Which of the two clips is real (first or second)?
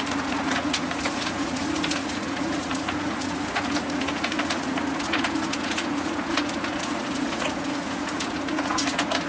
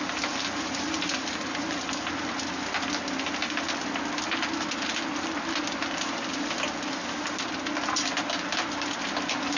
second